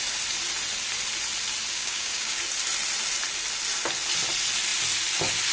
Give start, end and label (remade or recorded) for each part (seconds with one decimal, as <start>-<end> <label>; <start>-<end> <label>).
0.0-1.7 recorded; 1.7-2.4 remade; 2.4-5.5 recorded